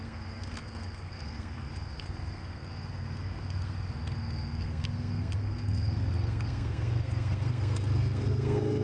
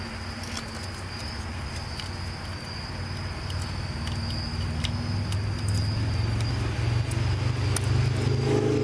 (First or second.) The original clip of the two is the second